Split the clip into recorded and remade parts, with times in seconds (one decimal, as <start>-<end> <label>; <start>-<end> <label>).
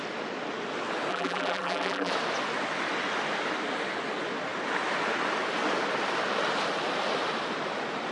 0.0-1.1 recorded; 1.1-2.1 remade; 2.1-8.1 recorded